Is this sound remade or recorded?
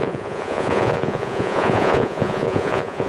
remade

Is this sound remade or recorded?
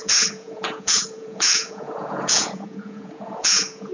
remade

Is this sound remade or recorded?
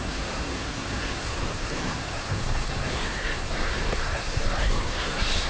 remade